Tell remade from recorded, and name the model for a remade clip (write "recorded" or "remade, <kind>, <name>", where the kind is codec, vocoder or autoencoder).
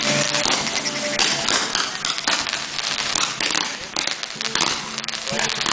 recorded